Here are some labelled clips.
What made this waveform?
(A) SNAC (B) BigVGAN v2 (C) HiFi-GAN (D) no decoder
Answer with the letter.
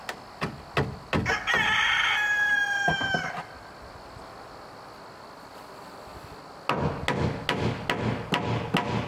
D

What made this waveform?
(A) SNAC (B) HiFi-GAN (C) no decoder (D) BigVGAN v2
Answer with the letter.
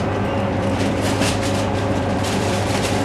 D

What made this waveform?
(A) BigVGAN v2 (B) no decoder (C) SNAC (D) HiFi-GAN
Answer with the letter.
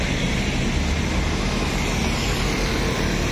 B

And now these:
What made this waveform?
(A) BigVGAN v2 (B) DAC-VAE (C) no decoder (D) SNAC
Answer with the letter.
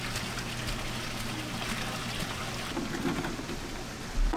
C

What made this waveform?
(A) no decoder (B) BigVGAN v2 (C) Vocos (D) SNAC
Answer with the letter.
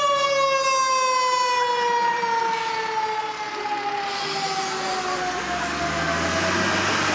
A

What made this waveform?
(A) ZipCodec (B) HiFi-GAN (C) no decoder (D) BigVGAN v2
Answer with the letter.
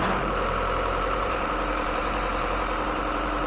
D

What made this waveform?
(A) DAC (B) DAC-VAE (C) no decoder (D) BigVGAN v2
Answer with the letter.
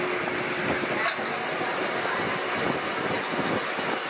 C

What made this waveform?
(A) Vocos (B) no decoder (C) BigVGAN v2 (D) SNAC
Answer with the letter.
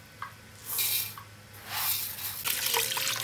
B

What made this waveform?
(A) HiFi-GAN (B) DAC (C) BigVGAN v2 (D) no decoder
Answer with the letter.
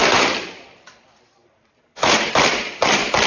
C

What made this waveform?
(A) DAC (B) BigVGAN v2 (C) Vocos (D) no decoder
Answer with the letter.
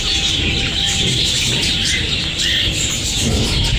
B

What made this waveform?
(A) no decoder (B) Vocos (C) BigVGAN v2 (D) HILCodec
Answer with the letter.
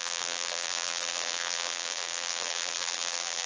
C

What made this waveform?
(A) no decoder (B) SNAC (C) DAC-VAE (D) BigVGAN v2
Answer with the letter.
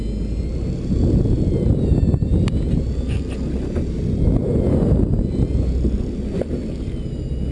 A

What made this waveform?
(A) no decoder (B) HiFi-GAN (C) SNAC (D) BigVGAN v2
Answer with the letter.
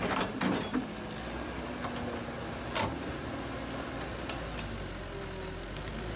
A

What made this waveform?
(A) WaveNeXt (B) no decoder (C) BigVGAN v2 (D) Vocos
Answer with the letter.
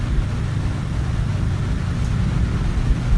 B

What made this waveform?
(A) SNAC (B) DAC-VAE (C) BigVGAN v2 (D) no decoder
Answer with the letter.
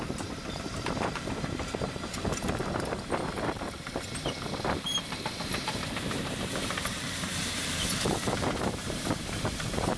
C